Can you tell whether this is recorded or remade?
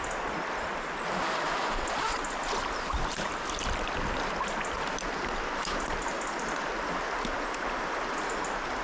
recorded